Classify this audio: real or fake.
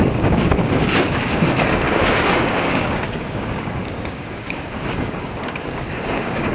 fake